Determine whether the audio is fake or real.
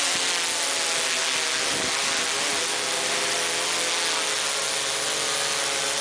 real